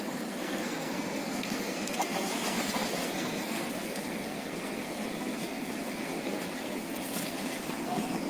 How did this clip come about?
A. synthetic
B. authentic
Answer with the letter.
A